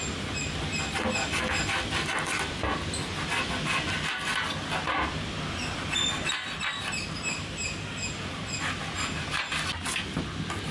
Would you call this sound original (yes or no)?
yes